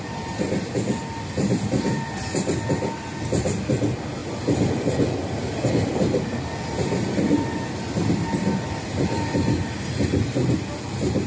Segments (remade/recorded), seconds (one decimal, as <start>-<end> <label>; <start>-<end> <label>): 0.0-11.3 recorded